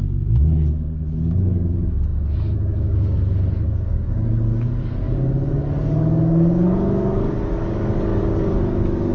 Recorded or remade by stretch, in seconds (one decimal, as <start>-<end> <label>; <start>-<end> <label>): 0.0-9.1 remade